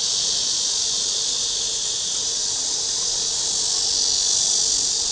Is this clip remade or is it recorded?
recorded